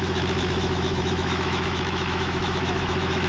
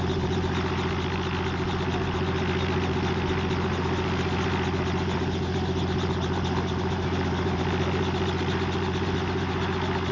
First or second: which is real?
second